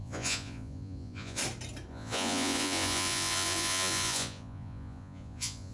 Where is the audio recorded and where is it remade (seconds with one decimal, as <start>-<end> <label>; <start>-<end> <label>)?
0.0-1.4 remade; 1.4-1.9 recorded; 1.9-5.7 remade